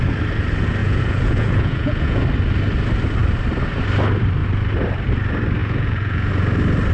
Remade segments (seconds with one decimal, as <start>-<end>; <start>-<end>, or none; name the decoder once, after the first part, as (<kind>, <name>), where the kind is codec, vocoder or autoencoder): 0.8-2.2 (vocoder, Vocos); 5.6-6.3